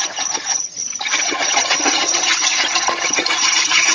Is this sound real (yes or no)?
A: no